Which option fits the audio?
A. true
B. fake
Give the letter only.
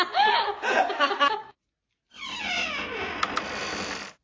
A